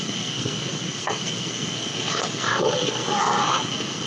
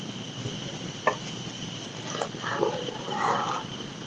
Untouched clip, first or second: second